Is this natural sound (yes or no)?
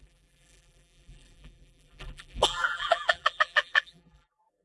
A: no